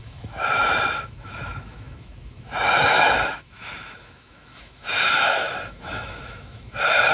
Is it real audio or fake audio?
fake